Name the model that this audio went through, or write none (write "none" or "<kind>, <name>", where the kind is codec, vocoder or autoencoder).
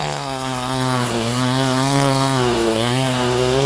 codec, SNAC